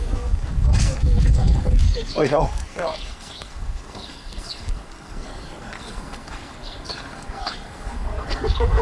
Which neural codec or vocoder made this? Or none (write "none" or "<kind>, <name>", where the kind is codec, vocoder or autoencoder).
codec, SNAC